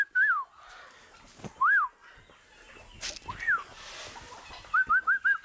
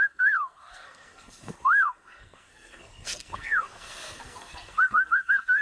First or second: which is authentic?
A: first